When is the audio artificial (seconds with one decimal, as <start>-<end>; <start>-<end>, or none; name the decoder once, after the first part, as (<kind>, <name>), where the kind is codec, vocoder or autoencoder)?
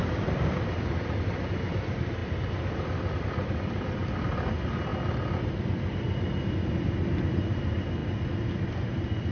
none